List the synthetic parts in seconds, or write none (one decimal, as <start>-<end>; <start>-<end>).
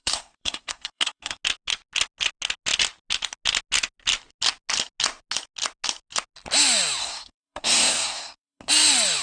0.0-1.4; 7.0-8.7